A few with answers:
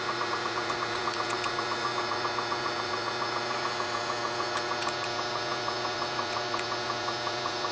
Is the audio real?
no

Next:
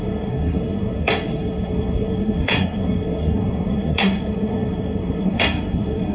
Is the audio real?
no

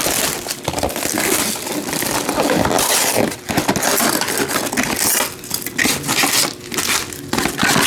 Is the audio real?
yes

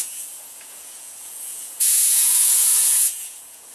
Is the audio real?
no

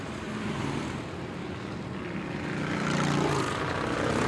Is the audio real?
yes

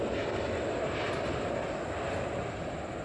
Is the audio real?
yes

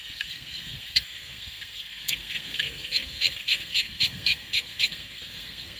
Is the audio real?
no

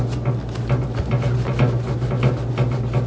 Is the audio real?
yes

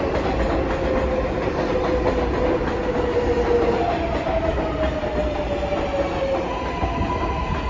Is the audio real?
yes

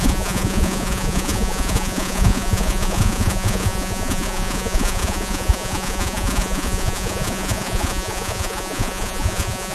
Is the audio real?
no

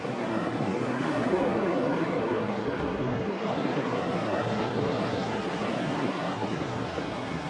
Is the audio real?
no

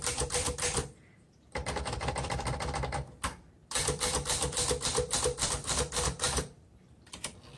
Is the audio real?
no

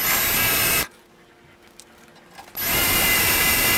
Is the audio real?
yes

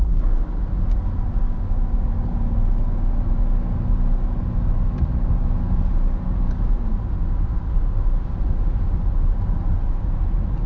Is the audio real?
yes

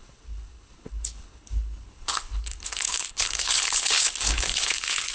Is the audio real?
no